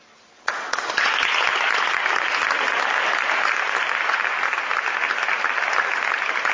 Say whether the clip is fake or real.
real